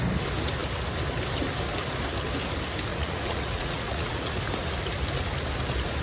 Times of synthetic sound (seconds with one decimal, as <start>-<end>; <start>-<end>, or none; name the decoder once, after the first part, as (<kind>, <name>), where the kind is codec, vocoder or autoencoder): 2.9-4.4 (vocoder, Vocos)